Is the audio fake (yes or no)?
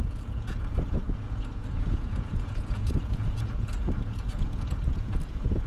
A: yes